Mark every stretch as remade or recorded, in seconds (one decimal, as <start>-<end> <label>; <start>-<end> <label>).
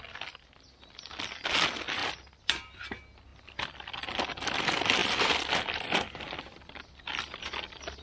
0.0-3.3 recorded; 3.3-4.0 remade; 4.0-5.0 recorded; 5.0-7.5 remade; 7.5-8.0 recorded